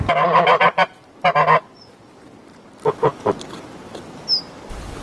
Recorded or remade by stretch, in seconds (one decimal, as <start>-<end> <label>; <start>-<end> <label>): 0.0-5.0 recorded